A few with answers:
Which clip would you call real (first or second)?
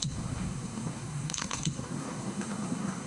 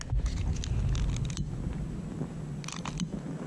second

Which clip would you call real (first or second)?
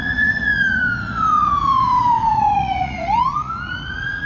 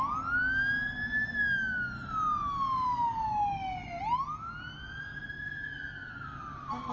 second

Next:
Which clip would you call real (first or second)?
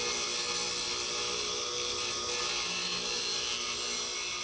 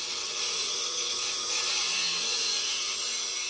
first